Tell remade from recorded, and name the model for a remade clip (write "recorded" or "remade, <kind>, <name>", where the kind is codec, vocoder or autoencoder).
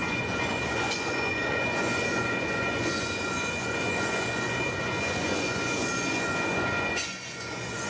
remade, vocoder, Vocos